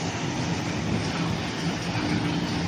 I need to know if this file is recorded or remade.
recorded